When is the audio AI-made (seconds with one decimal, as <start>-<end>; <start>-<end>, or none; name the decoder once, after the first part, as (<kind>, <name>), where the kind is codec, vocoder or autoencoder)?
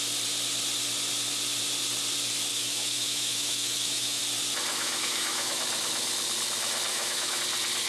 2.5-4.2 (autoencoder, DAC-VAE); 4.7-5.6; 6.9-7.4